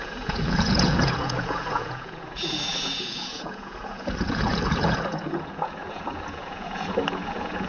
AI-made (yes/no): yes